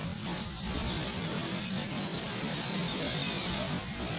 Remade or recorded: recorded